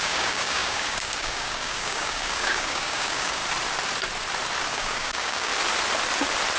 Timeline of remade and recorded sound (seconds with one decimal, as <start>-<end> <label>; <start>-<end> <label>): 0.0-3.4 remade; 3.4-4.7 recorded; 4.7-5.5 remade; 5.5-6.6 recorded